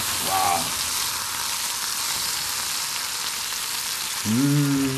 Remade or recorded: recorded